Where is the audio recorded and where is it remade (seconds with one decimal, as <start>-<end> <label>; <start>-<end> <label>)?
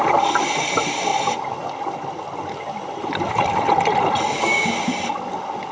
0.0-4.3 recorded; 4.3-4.9 remade; 4.9-5.7 recorded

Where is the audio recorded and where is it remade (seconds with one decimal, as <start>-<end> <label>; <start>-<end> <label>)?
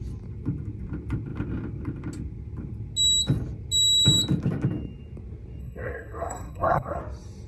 0.0-5.6 recorded; 5.6-7.0 remade; 7.0-7.5 recorded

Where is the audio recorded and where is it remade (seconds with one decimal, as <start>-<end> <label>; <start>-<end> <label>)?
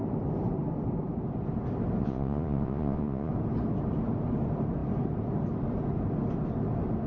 0.0-2.0 recorded; 2.0-3.3 remade; 3.3-7.1 recorded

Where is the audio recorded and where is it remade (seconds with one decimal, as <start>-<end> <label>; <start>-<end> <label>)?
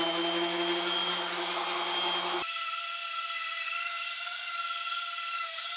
0.0-5.8 recorded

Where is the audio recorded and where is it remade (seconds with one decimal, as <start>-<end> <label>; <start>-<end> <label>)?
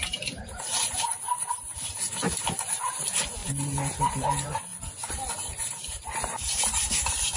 0.0-3.4 remade; 3.4-4.0 recorded; 4.0-4.7 remade; 4.7-5.6 recorded; 5.6-7.4 remade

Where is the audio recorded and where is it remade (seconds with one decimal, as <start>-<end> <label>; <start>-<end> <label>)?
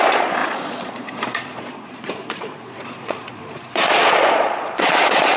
0.0-5.4 remade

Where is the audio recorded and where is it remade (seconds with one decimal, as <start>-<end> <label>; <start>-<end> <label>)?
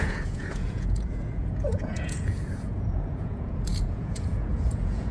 0.0-5.1 remade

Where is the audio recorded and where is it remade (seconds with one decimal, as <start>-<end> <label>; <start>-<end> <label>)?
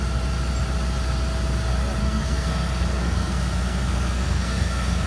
0.0-2.0 recorded; 2.0-5.1 remade